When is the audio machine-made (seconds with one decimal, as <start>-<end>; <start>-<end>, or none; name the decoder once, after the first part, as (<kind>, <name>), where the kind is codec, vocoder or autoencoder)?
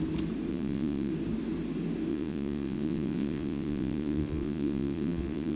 0.5-1.1 (vocoder, WaveNeXt); 2.1-5.6